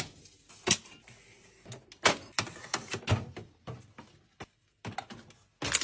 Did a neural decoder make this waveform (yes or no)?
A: no